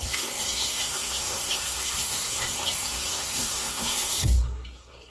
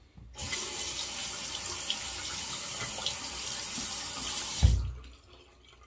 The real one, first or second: second